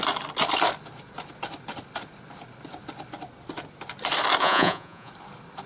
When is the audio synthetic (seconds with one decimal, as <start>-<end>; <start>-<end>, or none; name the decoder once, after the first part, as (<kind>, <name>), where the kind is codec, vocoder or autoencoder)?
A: 4.4-5.1 (vocoder, Vocos)